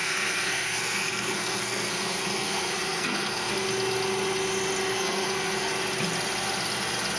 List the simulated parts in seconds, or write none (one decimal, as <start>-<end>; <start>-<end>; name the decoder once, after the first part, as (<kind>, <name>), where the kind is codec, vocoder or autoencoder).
0.0-3.5 (codec, SNAC); 4.9-5.7